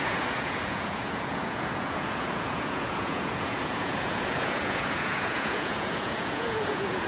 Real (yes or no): no